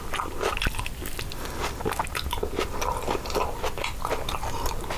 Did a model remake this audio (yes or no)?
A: no